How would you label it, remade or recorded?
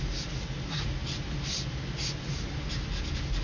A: recorded